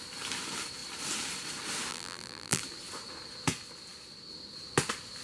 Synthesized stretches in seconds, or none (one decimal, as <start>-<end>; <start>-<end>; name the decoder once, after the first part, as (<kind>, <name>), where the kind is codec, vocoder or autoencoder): 1.9-2.6 (vocoder, BigVGAN v2)